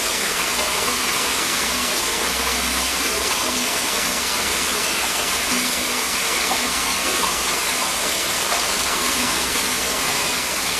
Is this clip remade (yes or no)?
yes